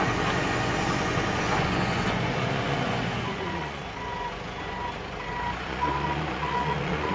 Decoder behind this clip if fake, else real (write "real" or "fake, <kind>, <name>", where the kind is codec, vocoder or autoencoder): fake, vocoder, Vocos